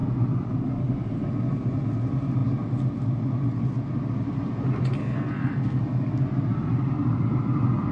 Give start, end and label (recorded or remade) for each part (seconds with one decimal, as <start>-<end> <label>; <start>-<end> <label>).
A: 0.0-5.0 recorded; 5.0-5.8 remade; 5.8-7.9 recorded